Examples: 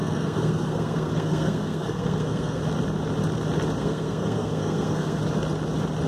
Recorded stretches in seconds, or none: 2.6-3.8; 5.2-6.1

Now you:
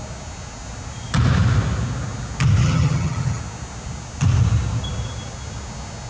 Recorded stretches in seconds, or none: 0.0-2.6; 3.4-6.1

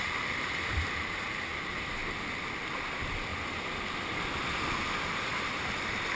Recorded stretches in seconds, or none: 2.0-2.5; 3.3-6.2

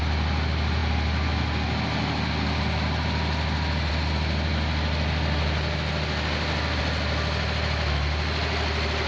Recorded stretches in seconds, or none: 0.0-9.1

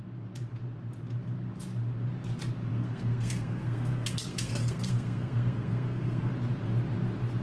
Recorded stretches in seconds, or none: 0.0-2.7; 6.3-7.4

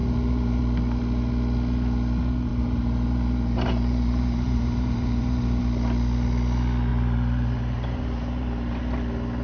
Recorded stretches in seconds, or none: 0.6-2.5; 5.6-6.9; 8.8-9.4